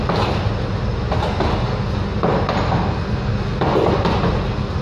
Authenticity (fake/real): real